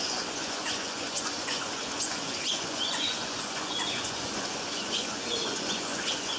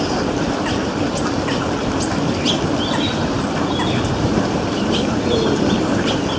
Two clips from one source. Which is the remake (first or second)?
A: first